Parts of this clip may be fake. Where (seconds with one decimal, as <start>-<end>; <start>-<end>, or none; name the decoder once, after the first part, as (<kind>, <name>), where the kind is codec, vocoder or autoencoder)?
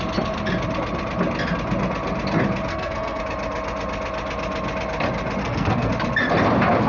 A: 2.7-3.2 (codec, SNAC); 5.4-5.9